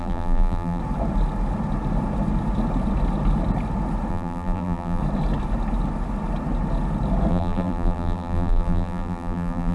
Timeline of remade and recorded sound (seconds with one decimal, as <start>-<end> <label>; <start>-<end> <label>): 0.0-0.8 remade; 0.8-4.1 recorded; 4.1-5.0 remade; 5.0-7.3 recorded; 7.3-9.7 remade